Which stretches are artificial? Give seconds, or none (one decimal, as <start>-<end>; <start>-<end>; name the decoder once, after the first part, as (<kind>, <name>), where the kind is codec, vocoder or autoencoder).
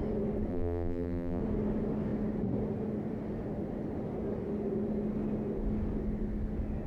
0.5-1.4 (vocoder, BigVGAN v2)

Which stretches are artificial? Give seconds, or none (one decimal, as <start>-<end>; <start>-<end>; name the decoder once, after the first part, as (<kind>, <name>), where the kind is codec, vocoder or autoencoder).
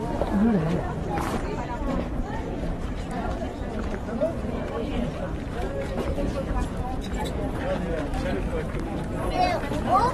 0.0-10.1 (vocoder, BigVGAN v2)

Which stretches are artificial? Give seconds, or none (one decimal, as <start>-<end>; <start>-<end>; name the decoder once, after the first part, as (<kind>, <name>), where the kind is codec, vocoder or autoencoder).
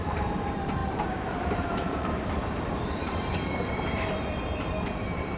0.0-5.4 (vocoder, BigVGAN v2)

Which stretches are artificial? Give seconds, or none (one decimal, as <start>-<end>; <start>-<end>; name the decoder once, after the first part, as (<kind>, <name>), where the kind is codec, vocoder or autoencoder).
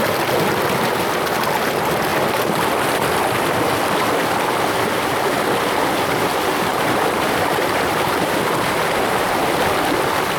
6.7-9.3 (vocoder, BigVGAN v2)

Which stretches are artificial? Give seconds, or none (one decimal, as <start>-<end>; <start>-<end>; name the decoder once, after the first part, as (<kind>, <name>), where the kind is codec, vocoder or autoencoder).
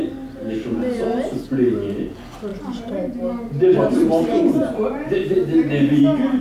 2.5-6.0 (vocoder, BigVGAN v2)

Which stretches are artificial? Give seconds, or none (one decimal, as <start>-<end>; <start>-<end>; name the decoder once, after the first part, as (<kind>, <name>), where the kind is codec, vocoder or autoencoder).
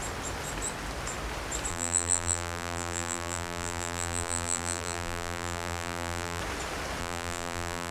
1.7-6.4 (vocoder, BigVGAN v2); 7.0-7.9